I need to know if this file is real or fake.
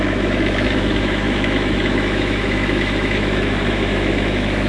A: fake